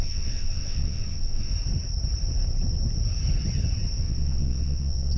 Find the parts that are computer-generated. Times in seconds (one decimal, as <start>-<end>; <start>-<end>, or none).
0.0-1.5; 4.0-5.2